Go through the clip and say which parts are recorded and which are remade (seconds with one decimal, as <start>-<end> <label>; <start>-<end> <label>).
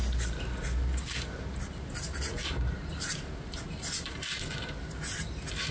0.0-5.7 recorded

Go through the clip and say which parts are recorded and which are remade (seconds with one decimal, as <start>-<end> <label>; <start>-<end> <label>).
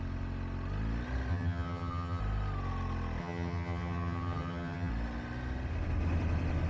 0.0-1.3 recorded; 1.3-2.2 remade; 2.2-3.2 recorded; 3.2-4.9 remade; 4.9-6.7 recorded